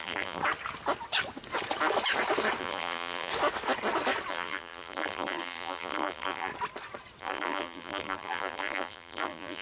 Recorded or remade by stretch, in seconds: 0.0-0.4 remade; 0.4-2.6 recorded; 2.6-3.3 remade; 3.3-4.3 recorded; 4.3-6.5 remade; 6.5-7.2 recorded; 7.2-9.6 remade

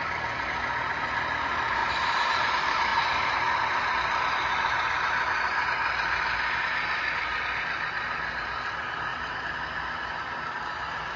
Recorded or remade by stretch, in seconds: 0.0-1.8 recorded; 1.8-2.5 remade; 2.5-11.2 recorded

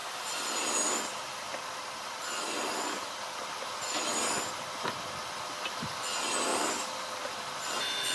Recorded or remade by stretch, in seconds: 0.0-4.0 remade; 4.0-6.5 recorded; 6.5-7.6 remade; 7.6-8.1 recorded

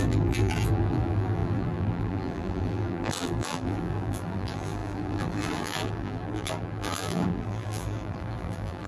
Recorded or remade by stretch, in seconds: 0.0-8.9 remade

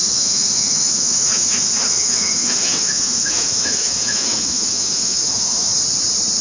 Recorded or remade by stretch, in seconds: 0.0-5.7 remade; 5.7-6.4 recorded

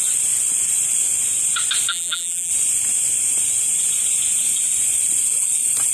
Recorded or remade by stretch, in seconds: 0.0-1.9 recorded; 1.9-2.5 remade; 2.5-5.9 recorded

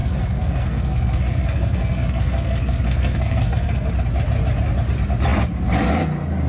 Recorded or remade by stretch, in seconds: 0.0-3.9 remade; 3.9-6.5 recorded

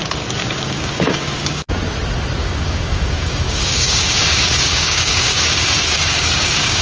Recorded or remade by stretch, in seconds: 0.0-0.4 recorded; 0.4-1.7 remade; 1.7-2.4 recorded; 2.4-6.8 remade